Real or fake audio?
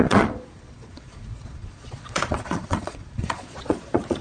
fake